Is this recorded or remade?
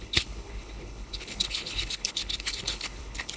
remade